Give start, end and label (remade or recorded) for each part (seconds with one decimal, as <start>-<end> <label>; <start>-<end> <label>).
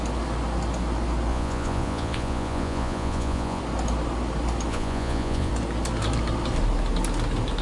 0.0-1.3 recorded; 1.3-3.6 remade; 3.6-4.7 recorded; 4.7-5.5 remade; 5.5-7.6 recorded